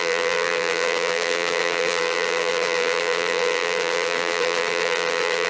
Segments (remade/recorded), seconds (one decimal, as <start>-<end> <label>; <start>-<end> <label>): 0.0-5.5 remade